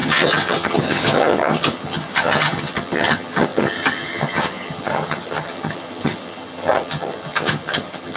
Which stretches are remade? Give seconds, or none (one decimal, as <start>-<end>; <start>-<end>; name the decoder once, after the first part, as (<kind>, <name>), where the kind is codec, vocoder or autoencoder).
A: 0.0-8.2 (vocoder, HiFi-GAN)